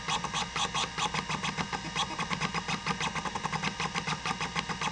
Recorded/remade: recorded